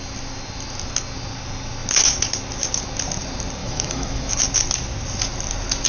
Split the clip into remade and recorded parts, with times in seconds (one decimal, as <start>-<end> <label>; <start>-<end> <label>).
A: 0.0-3.6 recorded; 3.6-4.3 remade; 4.3-5.9 recorded